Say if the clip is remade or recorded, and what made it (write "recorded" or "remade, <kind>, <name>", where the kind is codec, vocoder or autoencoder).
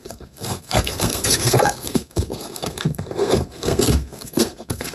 remade, codec, SNAC